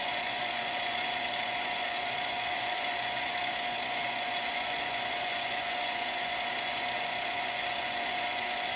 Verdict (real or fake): fake